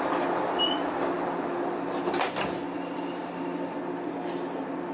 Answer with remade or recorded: recorded